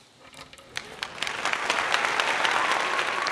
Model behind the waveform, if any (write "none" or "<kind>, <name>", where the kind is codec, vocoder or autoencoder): none